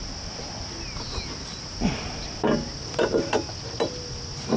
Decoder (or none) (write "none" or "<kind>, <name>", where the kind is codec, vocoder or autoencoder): none